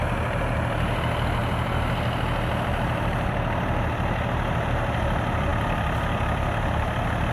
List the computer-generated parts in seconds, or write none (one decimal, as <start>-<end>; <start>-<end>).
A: none